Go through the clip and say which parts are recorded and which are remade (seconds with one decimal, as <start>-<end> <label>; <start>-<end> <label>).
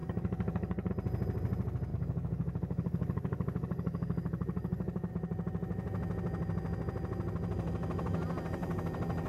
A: 0.0-0.9 remade; 0.9-1.9 recorded; 1.9-5.1 remade; 5.1-9.3 recorded